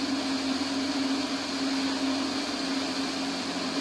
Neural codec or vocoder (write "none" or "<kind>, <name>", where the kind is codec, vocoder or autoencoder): none